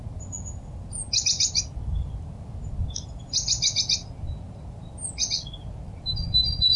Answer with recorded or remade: recorded